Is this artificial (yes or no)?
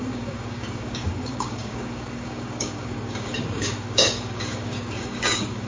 yes